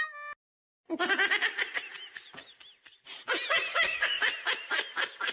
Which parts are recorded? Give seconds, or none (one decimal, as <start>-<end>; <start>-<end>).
0.0-3.7; 4.2-5.3